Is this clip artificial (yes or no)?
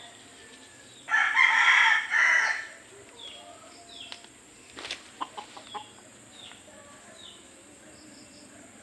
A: no